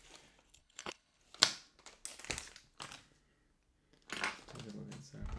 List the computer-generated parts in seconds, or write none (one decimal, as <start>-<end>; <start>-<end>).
0.6-1.2